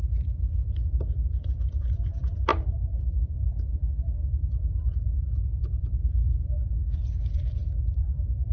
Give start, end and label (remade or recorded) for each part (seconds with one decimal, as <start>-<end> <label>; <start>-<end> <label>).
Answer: 0.0-3.5 remade; 3.5-5.6 recorded; 5.6-6.2 remade; 6.2-6.9 recorded; 6.9-8.5 remade